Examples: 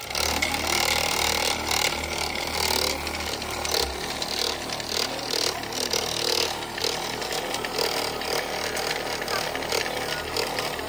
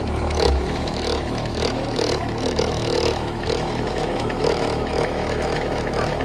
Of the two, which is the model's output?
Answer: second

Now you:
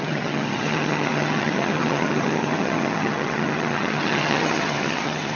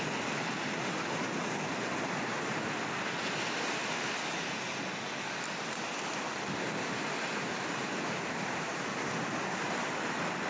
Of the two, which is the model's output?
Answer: first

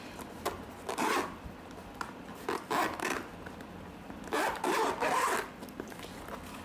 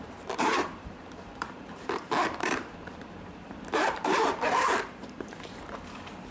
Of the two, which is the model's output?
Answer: second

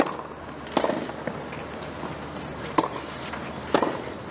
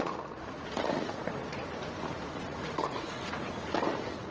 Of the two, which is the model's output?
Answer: second